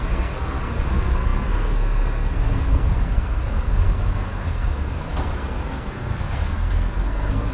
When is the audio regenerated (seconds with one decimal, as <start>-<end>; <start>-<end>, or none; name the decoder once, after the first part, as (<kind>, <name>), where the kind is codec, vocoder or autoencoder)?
0.0-7.5 (codec, SNAC)